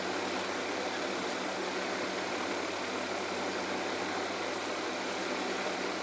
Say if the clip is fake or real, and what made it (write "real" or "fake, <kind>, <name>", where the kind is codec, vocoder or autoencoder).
real